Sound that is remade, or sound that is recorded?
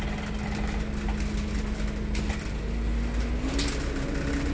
recorded